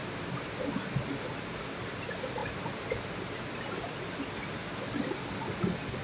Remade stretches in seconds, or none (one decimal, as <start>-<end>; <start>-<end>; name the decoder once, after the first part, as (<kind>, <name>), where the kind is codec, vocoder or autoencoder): none